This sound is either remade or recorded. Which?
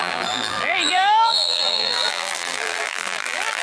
remade